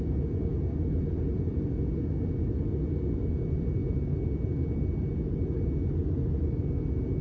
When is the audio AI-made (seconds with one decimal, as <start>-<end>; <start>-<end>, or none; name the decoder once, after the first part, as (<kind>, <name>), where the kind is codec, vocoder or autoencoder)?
none

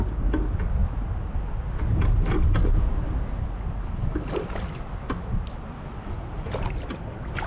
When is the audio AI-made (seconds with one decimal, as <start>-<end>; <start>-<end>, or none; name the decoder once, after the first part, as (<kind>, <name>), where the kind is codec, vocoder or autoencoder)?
none

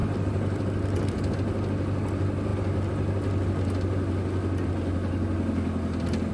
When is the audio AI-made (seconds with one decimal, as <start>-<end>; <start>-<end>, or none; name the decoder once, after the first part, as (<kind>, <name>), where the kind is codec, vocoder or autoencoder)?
none